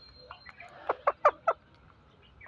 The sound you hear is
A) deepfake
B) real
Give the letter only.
B